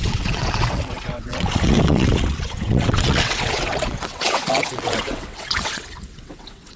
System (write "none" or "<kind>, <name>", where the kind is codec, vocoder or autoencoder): vocoder, WaveNeXt